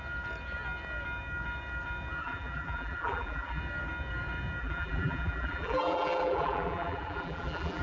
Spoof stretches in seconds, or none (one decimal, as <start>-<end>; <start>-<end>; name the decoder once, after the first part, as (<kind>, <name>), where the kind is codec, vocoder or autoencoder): 2.2-3.6 (vocoder, BigVGAN v2); 4.6-7.8